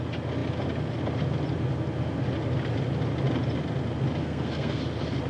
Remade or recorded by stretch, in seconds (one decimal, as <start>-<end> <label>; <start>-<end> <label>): 0.0-4.2 recorded; 4.2-4.8 remade; 4.8-5.3 recorded

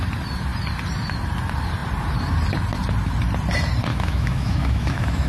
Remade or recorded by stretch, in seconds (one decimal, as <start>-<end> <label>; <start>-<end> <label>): 0.0-3.9 recorded; 3.9-5.3 remade

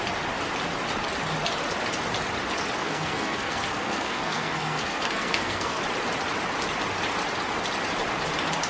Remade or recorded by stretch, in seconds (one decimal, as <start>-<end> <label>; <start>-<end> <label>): 0.0-2.8 recorded; 2.8-5.8 remade; 5.8-8.7 recorded

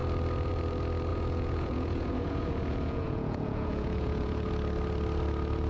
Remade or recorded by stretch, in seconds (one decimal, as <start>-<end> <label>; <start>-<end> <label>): 0.0-1.1 recorded; 1.1-4.5 remade; 4.5-5.7 recorded